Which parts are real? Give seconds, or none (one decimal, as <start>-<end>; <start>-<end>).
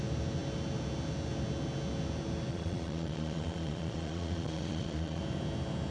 0.0-2.5; 5.2-5.9